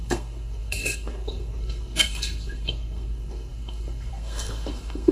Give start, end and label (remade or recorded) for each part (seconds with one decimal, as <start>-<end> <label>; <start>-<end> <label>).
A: 0.0-5.1 remade

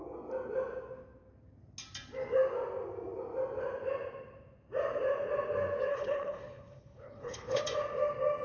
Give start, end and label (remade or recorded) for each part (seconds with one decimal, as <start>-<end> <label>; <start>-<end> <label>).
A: 0.0-5.9 recorded; 5.9-7.6 remade; 7.6-8.4 recorded